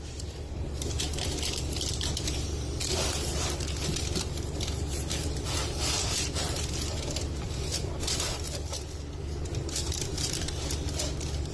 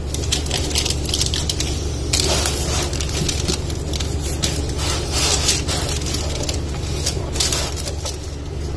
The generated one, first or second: first